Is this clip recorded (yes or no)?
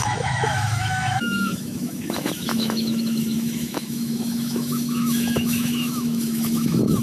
no